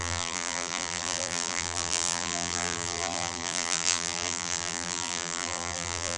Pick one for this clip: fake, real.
fake